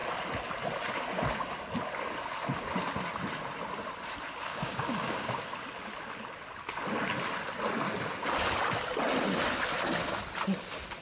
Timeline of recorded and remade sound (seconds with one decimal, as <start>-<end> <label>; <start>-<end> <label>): 0.0-4.5 recorded; 4.5-5.3 remade; 5.3-11.0 recorded